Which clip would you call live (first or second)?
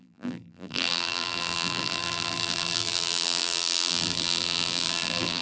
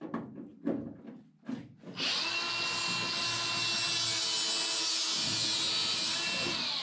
second